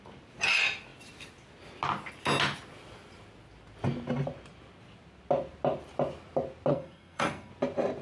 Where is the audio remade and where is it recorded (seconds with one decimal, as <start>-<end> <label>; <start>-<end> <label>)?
0.0-6.7 recorded; 6.7-7.5 remade; 7.5-8.0 recorded